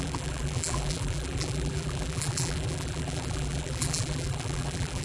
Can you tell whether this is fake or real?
fake